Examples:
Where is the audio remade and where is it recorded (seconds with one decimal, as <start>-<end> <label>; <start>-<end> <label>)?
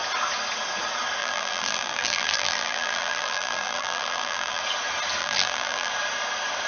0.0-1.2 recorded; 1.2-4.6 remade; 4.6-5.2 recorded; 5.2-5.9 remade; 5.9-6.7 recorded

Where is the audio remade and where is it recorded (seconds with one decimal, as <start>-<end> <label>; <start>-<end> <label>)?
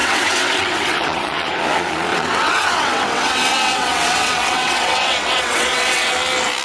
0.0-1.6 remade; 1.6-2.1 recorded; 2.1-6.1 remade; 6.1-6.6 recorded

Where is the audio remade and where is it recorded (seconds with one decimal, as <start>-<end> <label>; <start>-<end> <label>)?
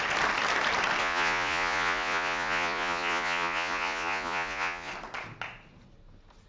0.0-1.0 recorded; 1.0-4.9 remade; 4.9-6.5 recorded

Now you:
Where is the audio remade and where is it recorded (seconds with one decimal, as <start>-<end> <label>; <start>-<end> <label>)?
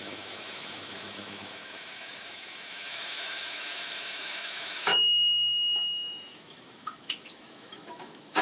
0.0-8.4 remade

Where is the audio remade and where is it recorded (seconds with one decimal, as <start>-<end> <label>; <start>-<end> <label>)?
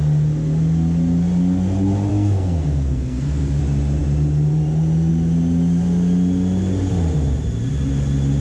0.0-2.1 recorded; 2.1-3.6 remade; 3.6-8.4 recorded